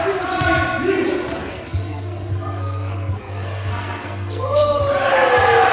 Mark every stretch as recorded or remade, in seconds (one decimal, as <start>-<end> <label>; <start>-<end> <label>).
0.0-1.4 recorded; 1.4-4.8 remade; 4.8-5.7 recorded